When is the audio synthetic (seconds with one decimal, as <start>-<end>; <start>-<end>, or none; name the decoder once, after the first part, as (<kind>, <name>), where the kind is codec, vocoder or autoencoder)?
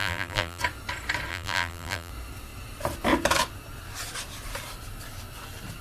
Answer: 0.0-0.6 (vocoder, BigVGAN v2); 1.3-2.1